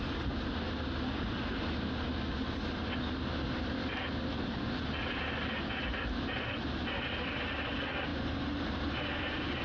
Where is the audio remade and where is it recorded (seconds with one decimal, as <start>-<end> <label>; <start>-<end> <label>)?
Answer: 0.0-9.6 recorded